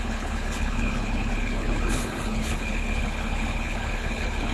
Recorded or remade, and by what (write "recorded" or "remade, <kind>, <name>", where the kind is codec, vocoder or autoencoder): remade, codec, HILCodec